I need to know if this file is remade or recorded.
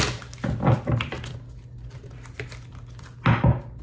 recorded